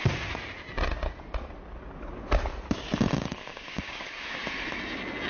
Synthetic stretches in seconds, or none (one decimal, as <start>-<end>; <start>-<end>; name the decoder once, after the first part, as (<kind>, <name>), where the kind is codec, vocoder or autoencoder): 3.2-4.4 (codec, DAC)